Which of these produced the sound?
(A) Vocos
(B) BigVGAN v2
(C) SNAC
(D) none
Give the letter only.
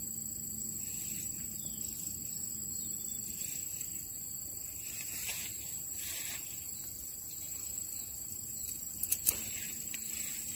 B